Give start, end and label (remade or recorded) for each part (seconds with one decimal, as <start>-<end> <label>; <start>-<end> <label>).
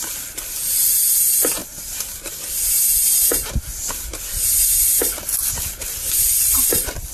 0.0-7.1 recorded